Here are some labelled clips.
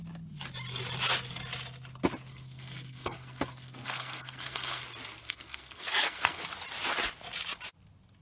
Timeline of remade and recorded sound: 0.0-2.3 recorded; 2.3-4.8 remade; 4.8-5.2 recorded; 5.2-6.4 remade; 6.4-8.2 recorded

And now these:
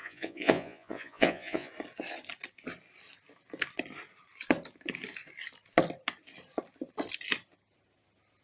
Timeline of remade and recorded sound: 0.0-1.7 remade; 1.7-8.4 recorded

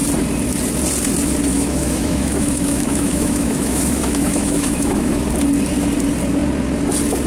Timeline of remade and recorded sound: 0.0-1.5 recorded; 1.5-5.2 remade; 5.2-7.3 recorded